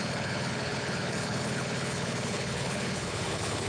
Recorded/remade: remade